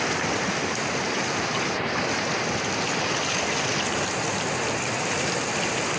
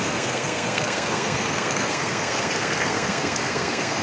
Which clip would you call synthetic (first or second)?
second